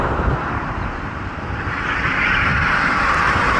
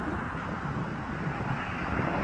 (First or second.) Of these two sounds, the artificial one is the first